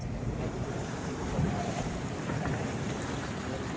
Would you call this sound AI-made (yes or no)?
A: yes